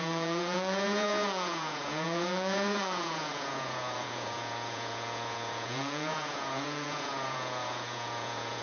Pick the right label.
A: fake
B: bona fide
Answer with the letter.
A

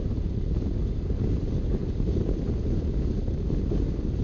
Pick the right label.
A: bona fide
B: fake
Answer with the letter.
A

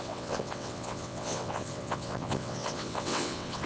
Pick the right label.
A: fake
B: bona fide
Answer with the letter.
A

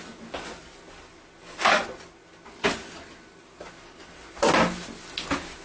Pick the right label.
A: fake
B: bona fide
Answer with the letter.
B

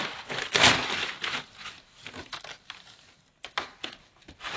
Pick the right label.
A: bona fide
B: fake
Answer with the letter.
A